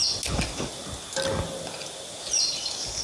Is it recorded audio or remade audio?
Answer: recorded